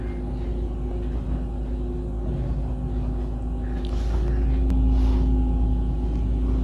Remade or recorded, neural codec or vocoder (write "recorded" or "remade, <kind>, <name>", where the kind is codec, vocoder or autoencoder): recorded